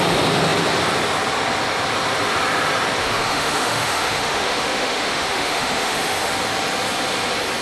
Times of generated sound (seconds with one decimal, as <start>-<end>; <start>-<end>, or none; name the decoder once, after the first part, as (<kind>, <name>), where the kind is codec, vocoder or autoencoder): 3.0-6.3 (autoencoder, DAC-VAE)